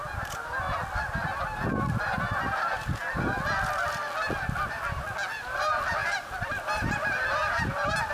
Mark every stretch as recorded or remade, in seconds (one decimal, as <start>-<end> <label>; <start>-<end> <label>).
0.0-8.1 recorded